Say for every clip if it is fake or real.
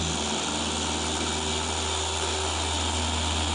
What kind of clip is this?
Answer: real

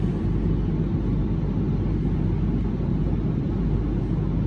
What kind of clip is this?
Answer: real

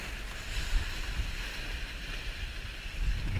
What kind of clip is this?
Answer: real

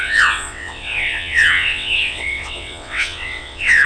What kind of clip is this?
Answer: fake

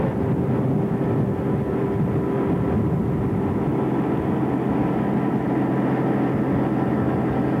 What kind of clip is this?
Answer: real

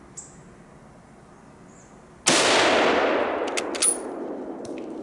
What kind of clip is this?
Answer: real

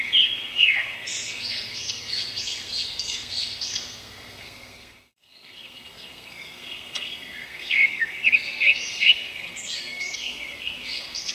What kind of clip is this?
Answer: fake